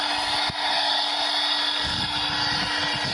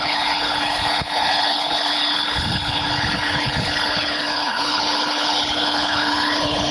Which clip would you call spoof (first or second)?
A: second